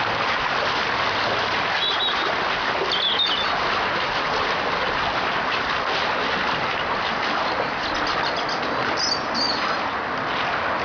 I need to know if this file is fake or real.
real